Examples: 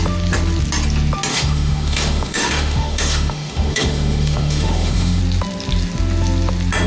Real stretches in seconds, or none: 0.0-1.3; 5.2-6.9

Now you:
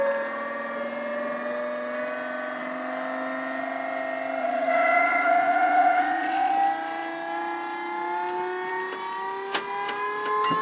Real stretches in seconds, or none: 0.0-4.4; 6.5-10.6

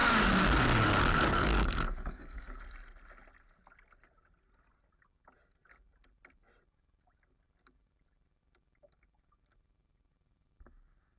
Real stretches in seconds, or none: 2.6-11.2

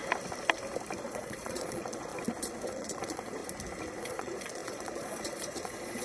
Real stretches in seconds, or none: 0.0-1.0; 2.1-2.7; 3.4-4.0

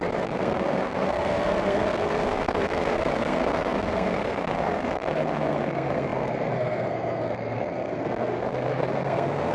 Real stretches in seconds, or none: none

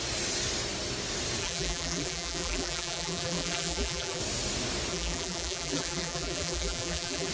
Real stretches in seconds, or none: 0.0-1.4; 4.2-4.9

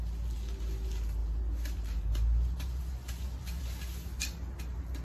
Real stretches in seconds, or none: 0.0-5.0

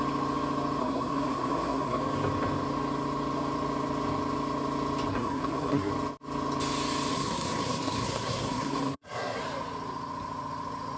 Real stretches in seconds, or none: 0.0-0.8; 2.0-5.1; 5.9-7.1; 9.4-11.0